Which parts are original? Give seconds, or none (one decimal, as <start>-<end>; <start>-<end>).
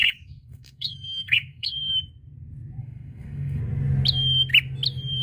1.9-2.8; 3.6-5.2